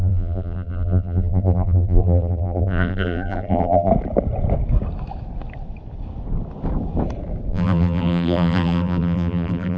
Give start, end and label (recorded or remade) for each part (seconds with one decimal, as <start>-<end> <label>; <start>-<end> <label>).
0.0-3.9 remade; 3.9-7.5 recorded; 7.5-9.8 remade